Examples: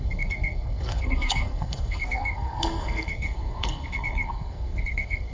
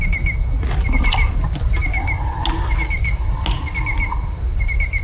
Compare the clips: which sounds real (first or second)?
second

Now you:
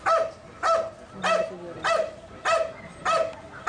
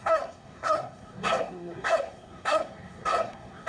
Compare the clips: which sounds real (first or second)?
first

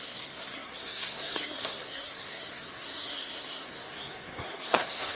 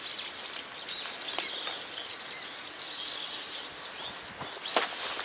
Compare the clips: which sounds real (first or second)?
second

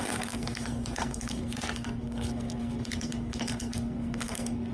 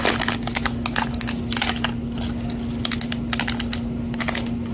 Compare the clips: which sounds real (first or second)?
second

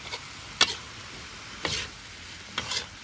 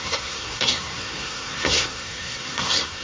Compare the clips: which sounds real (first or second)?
first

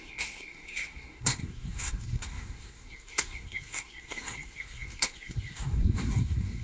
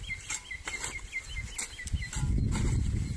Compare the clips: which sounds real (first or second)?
second